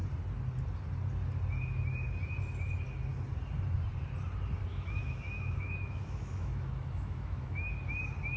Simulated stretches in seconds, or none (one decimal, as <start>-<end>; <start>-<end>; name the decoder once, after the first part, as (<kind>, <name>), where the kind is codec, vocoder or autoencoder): 4.7-7.7 (autoencoder, DAC-VAE)